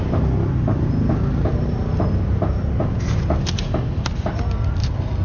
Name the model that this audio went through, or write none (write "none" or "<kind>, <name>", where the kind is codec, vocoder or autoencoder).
none